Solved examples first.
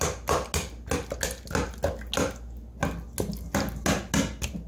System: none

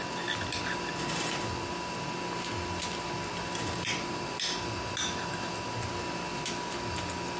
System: none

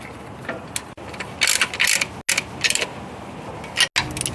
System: none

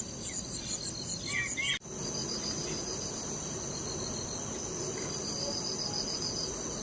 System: none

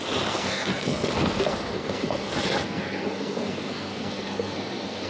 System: codec, SNAC